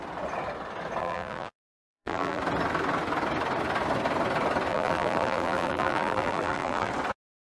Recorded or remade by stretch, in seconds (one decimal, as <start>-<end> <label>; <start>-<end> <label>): 0.0-1.0 recorded; 1.0-2.4 remade; 2.4-4.7 recorded; 4.7-6.9 remade; 6.9-7.5 recorded